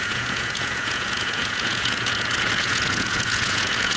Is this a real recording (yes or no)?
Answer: no